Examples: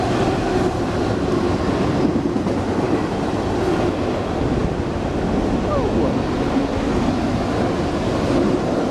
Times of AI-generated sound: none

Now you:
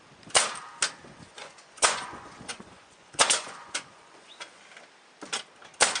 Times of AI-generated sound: 1.0-4.6 (vocoder, Vocos)